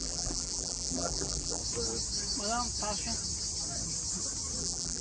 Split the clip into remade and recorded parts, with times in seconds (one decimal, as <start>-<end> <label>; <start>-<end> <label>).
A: 0.0-1.6 remade; 1.6-4.6 recorded; 4.6-5.0 remade